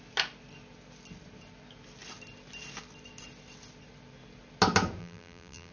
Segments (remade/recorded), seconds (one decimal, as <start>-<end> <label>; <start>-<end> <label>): 0.0-5.0 recorded; 5.0-5.7 remade